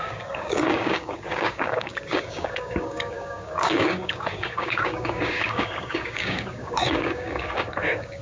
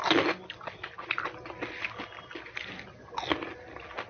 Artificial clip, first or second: first